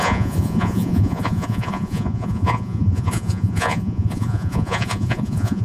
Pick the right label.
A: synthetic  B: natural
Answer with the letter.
A